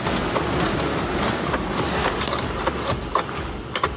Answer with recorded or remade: recorded